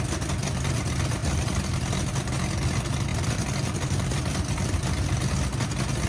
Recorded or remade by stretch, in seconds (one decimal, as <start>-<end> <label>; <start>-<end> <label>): 0.0-1.2 recorded; 1.2-1.8 remade; 1.8-3.1 recorded; 3.1-5.3 remade; 5.3-6.1 recorded